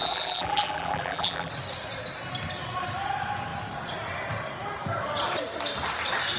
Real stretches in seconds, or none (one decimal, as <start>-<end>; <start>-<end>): 1.5-6.4